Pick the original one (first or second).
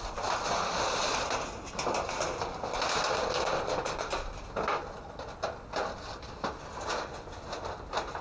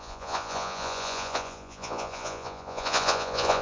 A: first